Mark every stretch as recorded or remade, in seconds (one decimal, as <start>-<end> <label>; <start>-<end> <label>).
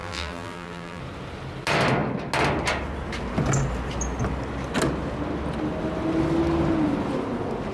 0.0-1.0 remade; 1.0-7.7 recorded